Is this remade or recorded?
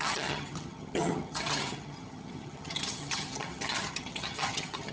remade